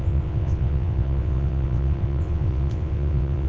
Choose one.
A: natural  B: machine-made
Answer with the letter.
B